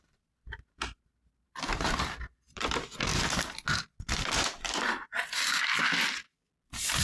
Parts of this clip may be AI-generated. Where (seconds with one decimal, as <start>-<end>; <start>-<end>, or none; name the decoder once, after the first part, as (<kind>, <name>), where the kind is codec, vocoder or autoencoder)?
0.0-3.1 (vocoder, BigVGAN v2)